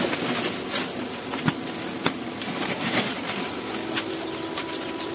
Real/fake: real